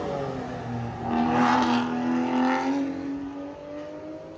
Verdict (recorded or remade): recorded